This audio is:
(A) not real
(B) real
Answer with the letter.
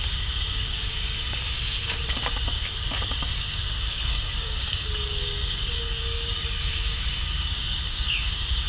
A